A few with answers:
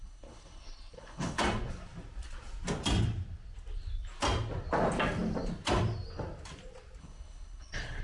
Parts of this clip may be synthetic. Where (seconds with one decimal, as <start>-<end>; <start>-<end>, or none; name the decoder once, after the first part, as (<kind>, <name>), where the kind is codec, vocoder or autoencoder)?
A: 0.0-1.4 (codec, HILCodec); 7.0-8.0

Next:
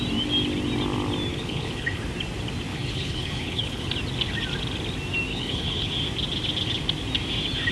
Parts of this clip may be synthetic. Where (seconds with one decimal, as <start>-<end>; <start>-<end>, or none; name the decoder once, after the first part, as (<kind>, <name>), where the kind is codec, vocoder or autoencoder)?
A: 1.3-2.0 (codec, HILCodec); 2.7-3.9; 5.3-5.9

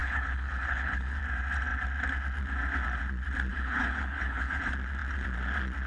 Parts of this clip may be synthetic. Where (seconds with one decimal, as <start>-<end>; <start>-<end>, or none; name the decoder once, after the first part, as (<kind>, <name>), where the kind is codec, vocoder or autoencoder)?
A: 0.0-1.2 (codec, HILCodec); 3.5-4.6

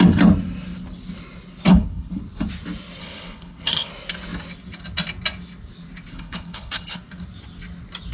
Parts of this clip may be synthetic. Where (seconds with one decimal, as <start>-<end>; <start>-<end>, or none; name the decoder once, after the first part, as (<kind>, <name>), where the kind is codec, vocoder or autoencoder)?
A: 1.7-2.2 (codec, HILCodec); 3.0-3.9; 6.1-7.0

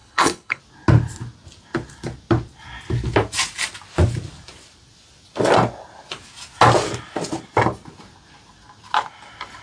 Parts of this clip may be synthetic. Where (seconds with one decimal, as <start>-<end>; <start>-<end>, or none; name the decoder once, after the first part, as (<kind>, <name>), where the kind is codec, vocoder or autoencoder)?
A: 0.0-0.6 (codec, HILCodec)